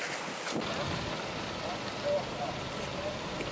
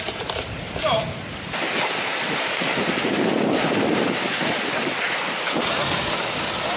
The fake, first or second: second